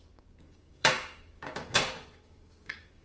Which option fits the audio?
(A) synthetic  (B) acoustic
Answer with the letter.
A